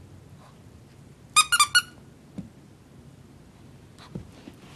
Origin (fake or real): real